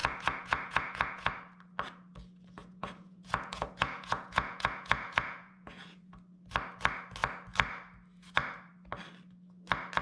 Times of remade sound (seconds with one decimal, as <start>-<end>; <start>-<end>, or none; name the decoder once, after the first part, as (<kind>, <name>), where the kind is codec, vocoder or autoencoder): 0.0-1.3 (vocoder, Vocos); 2.6-6.1